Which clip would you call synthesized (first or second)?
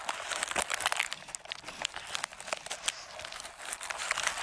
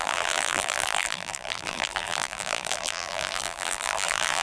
second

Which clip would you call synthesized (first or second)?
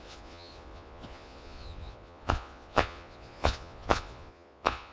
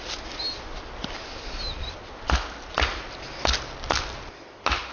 first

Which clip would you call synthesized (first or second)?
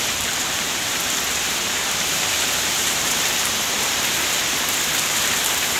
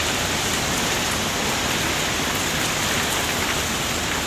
first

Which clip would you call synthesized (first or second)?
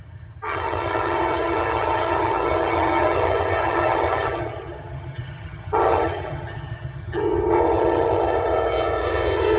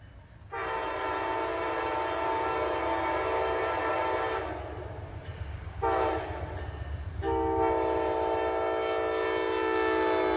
first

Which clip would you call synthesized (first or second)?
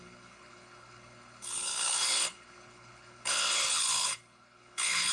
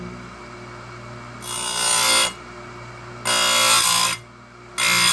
first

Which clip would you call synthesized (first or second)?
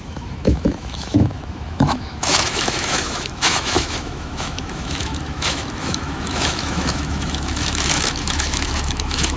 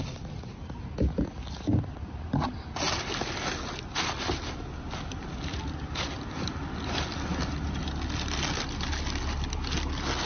first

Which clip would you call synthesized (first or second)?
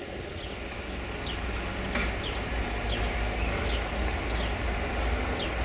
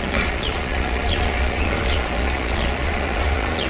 second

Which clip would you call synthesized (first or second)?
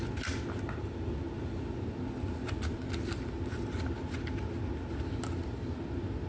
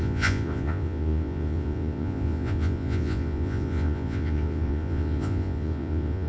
second